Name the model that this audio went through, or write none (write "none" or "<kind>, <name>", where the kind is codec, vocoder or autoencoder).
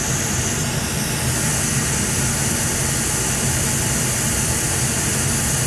none